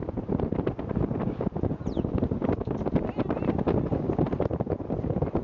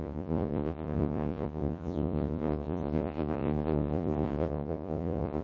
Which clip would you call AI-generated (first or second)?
second